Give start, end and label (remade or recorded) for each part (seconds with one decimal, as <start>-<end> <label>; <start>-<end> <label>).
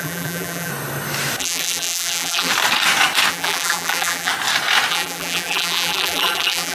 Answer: 0.0-0.7 remade; 0.7-1.4 recorded; 1.4-2.5 remade; 2.5-3.3 recorded; 3.3-4.3 remade; 4.3-4.9 recorded; 4.9-6.7 remade